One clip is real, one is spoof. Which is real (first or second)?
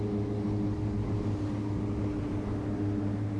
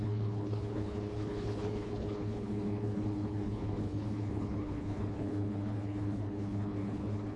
first